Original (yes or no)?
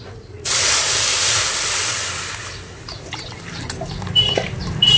no